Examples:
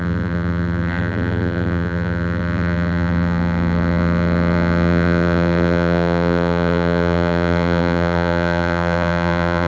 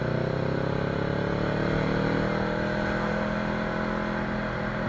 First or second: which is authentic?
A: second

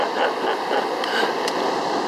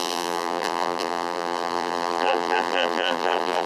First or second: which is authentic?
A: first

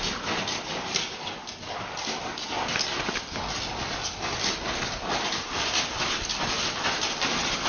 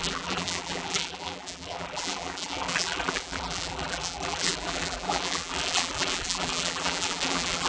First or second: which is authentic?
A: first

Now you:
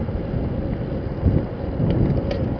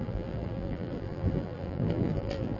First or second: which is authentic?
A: first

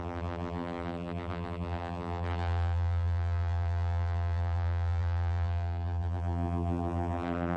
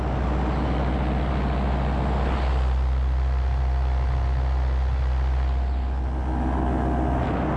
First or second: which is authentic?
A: second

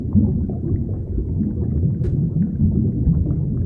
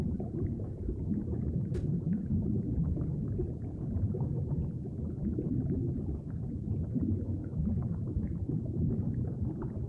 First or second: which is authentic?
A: first